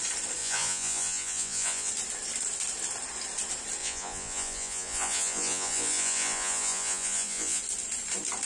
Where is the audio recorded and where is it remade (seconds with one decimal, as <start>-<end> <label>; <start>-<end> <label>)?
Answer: 0.0-0.4 recorded; 0.4-1.9 remade; 1.9-3.8 recorded; 3.8-7.6 remade; 7.6-8.5 recorded

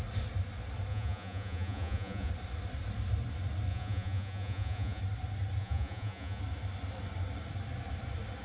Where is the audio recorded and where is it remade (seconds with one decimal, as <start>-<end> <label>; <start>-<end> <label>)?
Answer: 0.0-0.9 recorded; 0.9-2.3 remade; 2.3-3.7 recorded; 3.7-5.0 remade; 5.0-5.6 recorded; 5.6-6.4 remade; 6.4-8.4 recorded

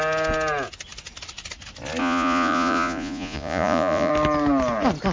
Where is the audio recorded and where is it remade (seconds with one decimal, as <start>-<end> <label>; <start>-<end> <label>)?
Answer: 0.0-2.0 recorded; 2.0-4.1 remade; 4.1-5.1 recorded

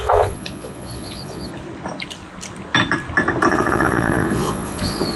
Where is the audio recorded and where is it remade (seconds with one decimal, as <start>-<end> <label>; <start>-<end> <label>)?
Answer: 0.0-1.5 remade; 1.5-3.5 recorded; 3.5-5.2 remade